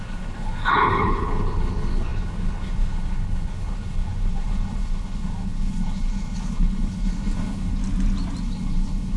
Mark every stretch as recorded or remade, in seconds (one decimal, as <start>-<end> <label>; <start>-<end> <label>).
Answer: 0.0-7.8 remade; 7.8-8.4 recorded; 8.4-9.2 remade